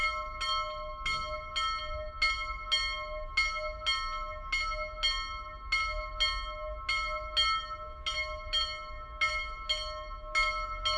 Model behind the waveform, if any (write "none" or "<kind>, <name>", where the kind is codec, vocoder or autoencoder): none